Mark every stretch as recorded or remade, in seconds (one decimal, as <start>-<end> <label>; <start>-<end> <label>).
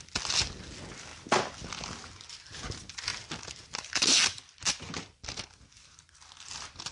0.0-6.9 recorded